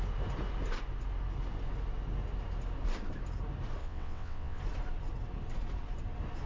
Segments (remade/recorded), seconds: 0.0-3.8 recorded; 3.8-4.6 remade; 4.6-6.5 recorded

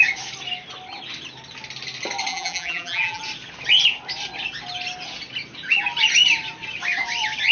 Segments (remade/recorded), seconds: 0.0-2.3 recorded; 2.3-3.2 remade; 3.2-7.5 recorded